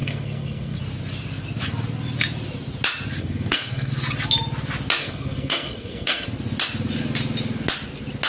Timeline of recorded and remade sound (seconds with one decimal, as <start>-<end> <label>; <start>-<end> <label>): 0.0-0.8 remade; 0.8-3.2 recorded; 3.2-3.9 remade; 3.9-5.0 recorded; 5.0-6.3 remade; 6.3-8.3 recorded